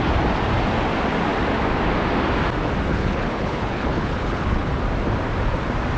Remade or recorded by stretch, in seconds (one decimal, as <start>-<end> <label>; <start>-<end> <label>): 0.0-2.9 recorded; 2.9-4.7 remade; 4.7-6.0 recorded